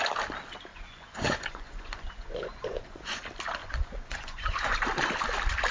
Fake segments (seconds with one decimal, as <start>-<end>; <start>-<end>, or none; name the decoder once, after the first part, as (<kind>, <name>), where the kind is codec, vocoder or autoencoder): 0.7-3.2 (vocoder, Vocos); 3.6-4.8

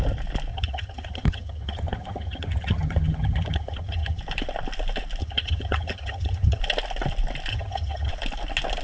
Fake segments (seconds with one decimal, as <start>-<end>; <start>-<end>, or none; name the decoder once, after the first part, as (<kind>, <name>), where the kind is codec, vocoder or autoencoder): 0.5-4.2 (vocoder, HiFi-GAN); 5.2-6.6; 7.5-8.1

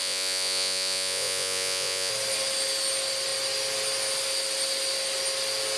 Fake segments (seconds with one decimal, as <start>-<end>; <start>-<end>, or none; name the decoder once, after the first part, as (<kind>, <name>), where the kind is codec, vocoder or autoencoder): 0.0-2.1 (vocoder, Vocos)

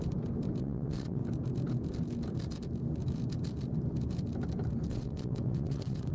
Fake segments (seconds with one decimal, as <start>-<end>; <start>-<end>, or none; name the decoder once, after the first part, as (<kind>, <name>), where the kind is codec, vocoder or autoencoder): 0.6-1.2 (vocoder, WaveNeXt); 4.9-6.1

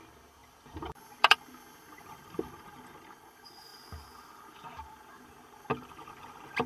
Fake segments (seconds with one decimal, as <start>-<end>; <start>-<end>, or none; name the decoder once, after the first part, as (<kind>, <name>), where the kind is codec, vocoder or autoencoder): 0.4-2.5 (vocoder, BigVGAN v2); 5.7-6.7